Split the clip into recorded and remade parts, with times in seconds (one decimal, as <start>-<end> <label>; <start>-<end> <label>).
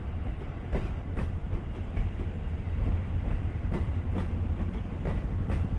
0.0-5.8 recorded